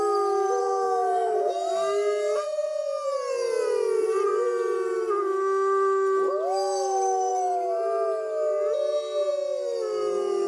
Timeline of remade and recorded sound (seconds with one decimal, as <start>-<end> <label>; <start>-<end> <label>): 0.0-0.6 recorded; 0.6-1.5 remade; 1.5-10.5 recorded